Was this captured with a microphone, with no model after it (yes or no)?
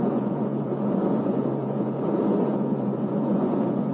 no